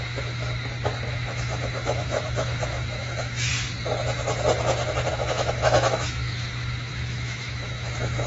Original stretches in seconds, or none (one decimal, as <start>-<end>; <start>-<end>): 0.4-1.1; 3.5-5.1